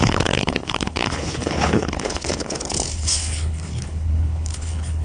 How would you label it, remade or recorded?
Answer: remade